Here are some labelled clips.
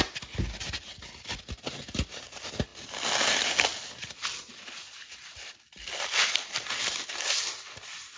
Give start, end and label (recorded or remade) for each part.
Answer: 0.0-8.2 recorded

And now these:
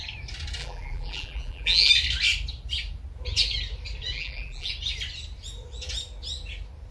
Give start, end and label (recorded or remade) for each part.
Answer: 0.0-0.6 recorded; 0.6-1.9 remade; 1.9-4.1 recorded; 4.1-4.7 remade; 4.7-6.9 recorded

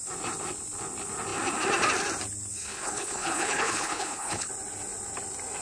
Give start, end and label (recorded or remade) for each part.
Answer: 0.0-2.5 recorded; 2.5-4.5 remade; 4.5-5.6 recorded

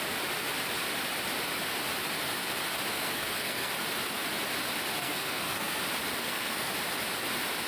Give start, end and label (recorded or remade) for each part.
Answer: 0.0-2.9 recorded; 2.9-3.7 remade; 3.7-5.0 recorded; 5.0-5.8 remade; 5.8-6.2 recorded; 6.2-6.7 remade; 6.7-7.7 recorded

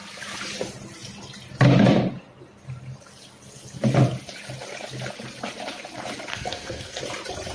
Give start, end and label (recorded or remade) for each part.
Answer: 0.0-6.3 recorded; 6.3-7.0 remade; 7.0-7.5 recorded

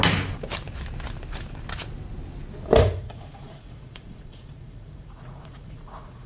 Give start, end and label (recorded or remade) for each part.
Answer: 0.0-2.8 recorded; 2.8-6.3 remade

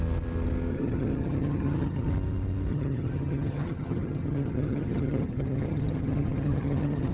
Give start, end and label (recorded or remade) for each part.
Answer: 0.0-0.7 recorded; 0.7-2.1 remade; 2.1-2.7 recorded; 2.7-7.1 remade

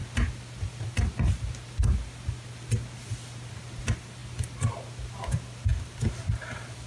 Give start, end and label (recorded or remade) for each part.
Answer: 0.0-6.9 recorded